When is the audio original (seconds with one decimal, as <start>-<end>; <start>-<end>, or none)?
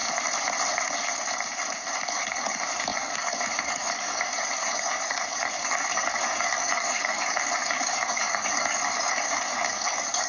0.0-2.1